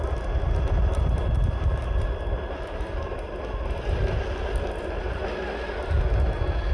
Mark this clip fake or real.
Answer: real